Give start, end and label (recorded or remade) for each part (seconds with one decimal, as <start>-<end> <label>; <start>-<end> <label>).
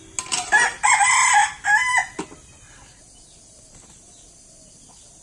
0.0-5.2 recorded